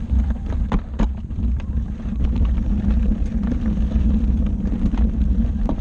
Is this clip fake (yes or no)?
yes